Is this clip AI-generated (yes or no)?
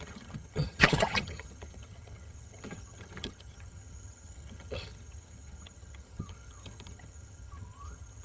yes